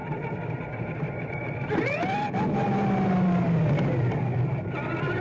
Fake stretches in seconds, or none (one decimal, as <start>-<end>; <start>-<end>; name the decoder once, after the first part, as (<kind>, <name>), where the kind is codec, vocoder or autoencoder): none

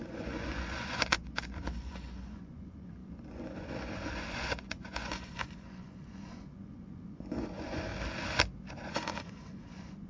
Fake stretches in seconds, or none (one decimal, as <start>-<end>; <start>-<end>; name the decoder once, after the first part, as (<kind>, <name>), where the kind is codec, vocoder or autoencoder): 0.0-7.9 (vocoder, Vocos); 8.7-10.1

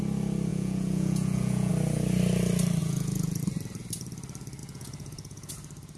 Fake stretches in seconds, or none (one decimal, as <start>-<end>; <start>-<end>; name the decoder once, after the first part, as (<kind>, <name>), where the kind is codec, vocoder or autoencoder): 0.5-1.7 (vocoder, Vocos); 2.8-3.4; 4.6-5.5

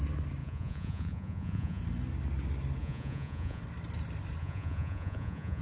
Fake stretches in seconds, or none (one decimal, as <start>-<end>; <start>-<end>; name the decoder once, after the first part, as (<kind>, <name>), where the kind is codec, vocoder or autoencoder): 0.4-1.8 (vocoder, Vocos); 2.8-3.6; 4.4-5.6

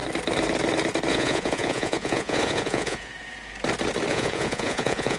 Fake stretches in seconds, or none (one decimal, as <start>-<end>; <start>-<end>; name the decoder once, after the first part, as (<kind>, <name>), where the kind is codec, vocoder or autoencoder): 1.1-3.1 (vocoder, Vocos); 4.1-5.2

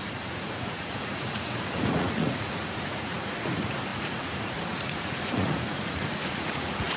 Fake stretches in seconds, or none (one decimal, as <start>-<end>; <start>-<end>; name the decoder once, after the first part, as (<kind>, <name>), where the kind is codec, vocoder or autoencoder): 0.0-7.0 (vocoder, Vocos)